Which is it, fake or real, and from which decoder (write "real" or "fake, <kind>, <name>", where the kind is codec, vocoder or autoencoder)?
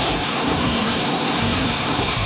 fake, codec, SNAC